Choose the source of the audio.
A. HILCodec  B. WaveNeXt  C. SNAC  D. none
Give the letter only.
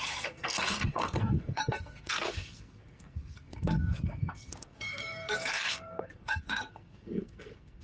C